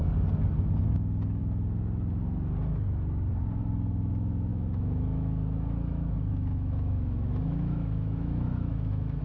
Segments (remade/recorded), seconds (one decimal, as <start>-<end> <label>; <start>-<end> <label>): 0.0-4.5 recorded; 4.5-9.2 remade